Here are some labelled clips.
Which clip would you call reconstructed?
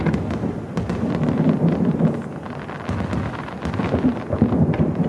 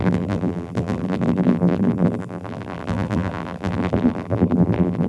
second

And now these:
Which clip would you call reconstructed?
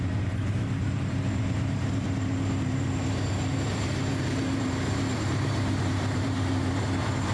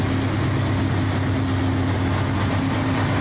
first